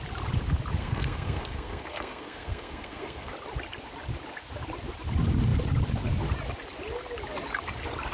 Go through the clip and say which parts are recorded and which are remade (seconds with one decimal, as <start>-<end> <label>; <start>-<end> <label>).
0.0-0.8 recorded; 0.8-3.3 remade; 3.3-8.1 recorded